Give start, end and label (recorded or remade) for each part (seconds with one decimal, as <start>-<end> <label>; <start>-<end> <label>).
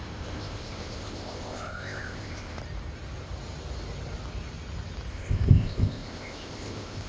0.0-2.6 remade; 2.6-5.1 recorded; 5.1-7.1 remade